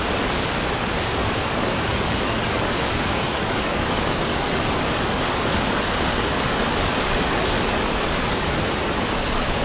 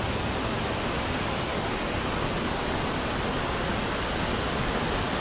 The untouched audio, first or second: second